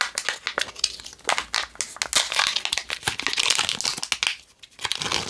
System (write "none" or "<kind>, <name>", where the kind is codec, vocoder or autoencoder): none